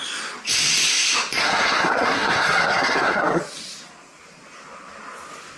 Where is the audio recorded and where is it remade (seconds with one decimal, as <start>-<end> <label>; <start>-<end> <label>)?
0.0-1.4 recorded; 1.4-3.4 remade; 3.4-5.6 recorded